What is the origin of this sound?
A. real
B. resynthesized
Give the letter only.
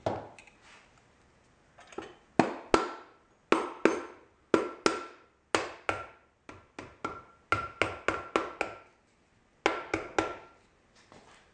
A